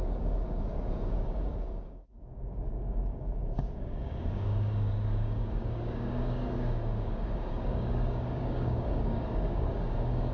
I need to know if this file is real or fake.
fake